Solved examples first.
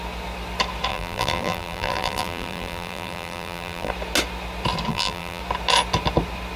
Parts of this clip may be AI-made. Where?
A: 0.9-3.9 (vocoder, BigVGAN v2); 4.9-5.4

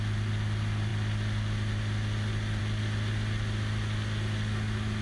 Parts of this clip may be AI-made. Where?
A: none

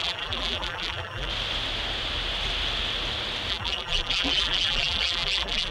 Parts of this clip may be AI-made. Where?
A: 0.0-1.3 (vocoder, BigVGAN v2); 3.5-5.7

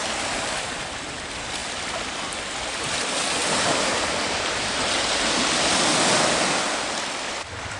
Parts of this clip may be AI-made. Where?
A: 0.0-3.4 (vocoder, BigVGAN v2); 4.6-7.8